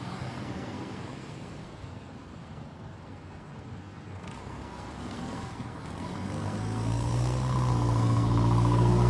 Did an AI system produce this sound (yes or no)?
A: yes